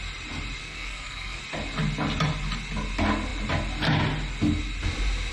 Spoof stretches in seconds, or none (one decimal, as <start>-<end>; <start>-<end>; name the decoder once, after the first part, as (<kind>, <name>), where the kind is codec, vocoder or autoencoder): 0.6-1.4 (codec, SNAC)